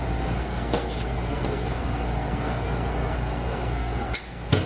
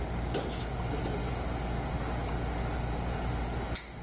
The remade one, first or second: first